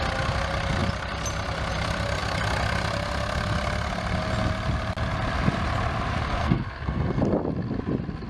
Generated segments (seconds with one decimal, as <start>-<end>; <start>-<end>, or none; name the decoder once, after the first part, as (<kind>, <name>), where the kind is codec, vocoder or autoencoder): 6.4-7.2 (codec, SNAC)